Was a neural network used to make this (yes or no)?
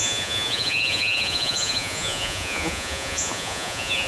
yes